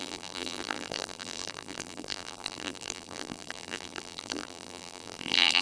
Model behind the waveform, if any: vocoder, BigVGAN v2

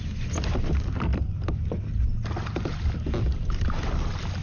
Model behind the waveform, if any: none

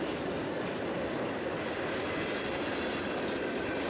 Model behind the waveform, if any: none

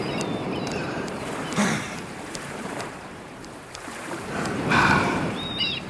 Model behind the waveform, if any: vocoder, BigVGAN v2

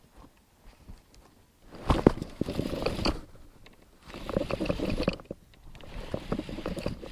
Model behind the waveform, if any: none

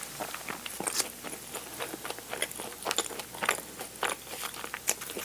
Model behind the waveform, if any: none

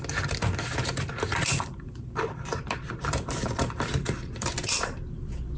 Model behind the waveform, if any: vocoder, BigVGAN v2